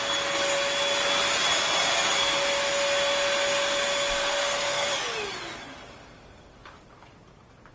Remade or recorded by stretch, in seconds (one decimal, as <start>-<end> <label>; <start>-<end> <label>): 0.0-4.2 recorded; 4.2-4.9 remade; 4.9-7.7 recorded